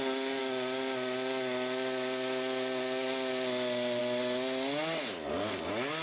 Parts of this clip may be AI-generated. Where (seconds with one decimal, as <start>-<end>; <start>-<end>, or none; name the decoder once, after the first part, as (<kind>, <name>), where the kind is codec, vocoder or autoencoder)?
none

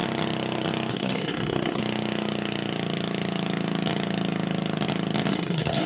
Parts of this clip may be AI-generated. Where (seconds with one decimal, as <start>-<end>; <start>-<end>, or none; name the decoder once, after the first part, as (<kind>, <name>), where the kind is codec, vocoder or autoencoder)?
0.9-1.8 (codec, SNAC); 5.3-5.9

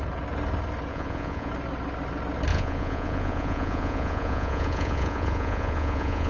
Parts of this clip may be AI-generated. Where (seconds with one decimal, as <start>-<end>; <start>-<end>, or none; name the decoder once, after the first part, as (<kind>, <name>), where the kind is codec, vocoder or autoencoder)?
0.9-1.5 (vocoder, Vocos); 2.5-6.3

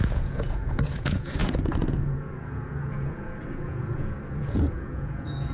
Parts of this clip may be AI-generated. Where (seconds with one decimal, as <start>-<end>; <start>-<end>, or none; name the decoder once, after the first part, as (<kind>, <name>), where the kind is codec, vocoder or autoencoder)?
0.0-5.5 (vocoder, Vocos)

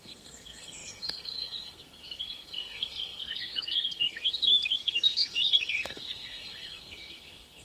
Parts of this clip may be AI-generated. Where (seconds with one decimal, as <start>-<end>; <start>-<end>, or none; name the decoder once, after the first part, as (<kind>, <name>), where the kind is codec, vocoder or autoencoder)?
0.0-7.6 (codec, SNAC)

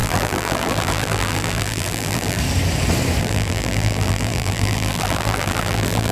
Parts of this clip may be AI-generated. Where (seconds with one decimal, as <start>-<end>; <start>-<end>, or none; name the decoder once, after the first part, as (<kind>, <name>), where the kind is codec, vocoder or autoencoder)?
0.0-2.4 (vocoder, BigVGAN v2); 3.2-6.1